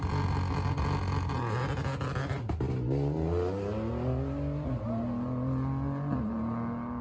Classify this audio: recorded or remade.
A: recorded